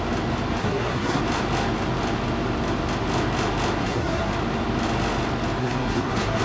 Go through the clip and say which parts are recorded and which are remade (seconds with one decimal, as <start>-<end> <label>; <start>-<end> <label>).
0.0-0.6 recorded; 0.6-1.2 remade; 1.2-3.8 recorded; 3.8-4.3 remade; 4.3-5.6 recorded; 5.6-6.4 remade